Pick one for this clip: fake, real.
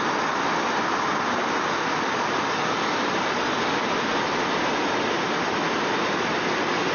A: real